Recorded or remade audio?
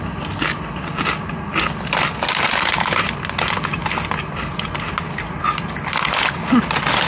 recorded